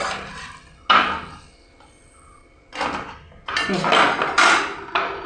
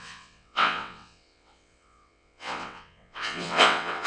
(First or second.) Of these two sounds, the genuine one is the first